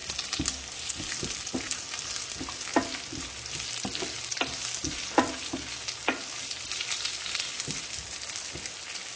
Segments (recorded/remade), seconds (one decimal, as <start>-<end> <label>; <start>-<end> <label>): 0.0-9.2 recorded